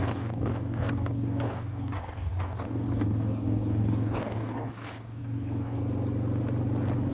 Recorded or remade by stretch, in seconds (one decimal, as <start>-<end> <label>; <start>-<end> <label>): 0.0-5.8 remade; 5.8-7.1 recorded